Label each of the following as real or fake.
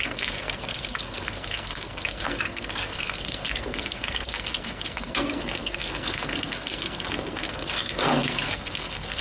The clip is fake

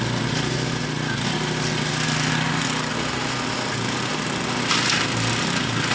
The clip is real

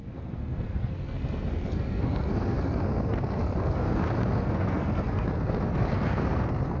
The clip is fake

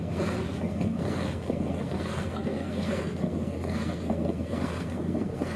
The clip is fake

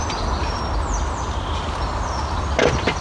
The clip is real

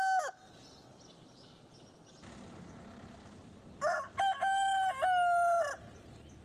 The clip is real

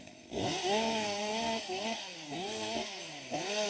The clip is fake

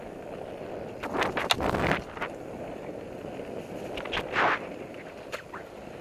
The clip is real